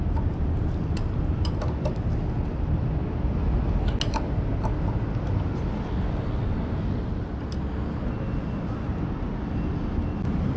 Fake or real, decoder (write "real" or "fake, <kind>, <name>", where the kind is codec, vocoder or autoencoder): real